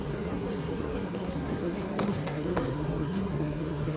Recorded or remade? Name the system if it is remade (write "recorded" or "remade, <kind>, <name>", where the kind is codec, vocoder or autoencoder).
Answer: remade, codec, SNAC